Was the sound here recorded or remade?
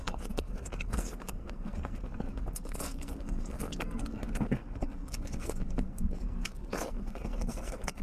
remade